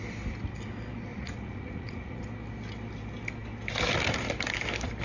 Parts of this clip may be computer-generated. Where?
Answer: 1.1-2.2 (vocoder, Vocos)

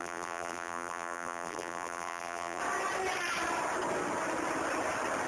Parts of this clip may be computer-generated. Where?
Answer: 0.0-2.6 (vocoder, BigVGAN v2)

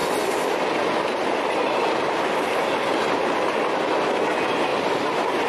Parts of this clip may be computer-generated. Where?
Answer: none

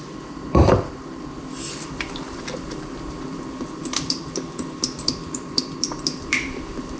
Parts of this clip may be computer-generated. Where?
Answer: 0.0-7.0 (vocoder, BigVGAN v2)

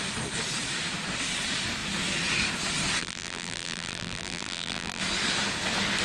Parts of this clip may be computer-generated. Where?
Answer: 3.0-5.0 (vocoder, BigVGAN v2)